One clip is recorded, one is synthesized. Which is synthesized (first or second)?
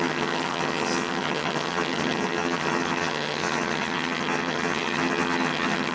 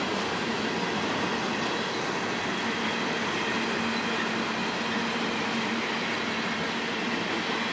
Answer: first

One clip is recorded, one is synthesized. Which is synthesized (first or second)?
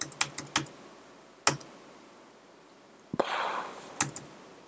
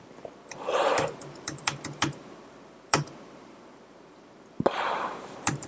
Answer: second